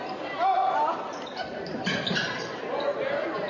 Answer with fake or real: real